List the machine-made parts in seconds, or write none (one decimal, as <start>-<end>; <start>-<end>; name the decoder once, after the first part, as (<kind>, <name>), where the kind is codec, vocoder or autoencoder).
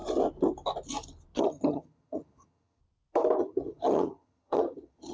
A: 1.4-2.8 (vocoder, HiFi-GAN); 3.4-5.1